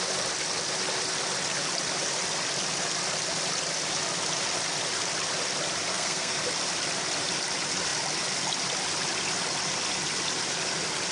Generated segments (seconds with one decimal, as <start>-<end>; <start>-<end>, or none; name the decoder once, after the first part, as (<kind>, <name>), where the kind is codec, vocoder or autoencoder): 5.9-6.4 (codec, SNAC)